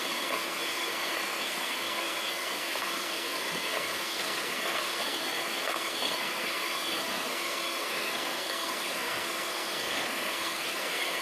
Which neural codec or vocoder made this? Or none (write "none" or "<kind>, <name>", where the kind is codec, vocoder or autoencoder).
codec, SNAC